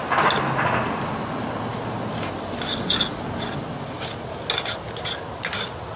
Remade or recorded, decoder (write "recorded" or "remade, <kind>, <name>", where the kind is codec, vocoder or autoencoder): recorded